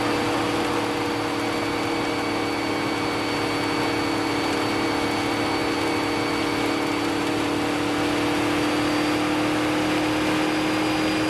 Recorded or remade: recorded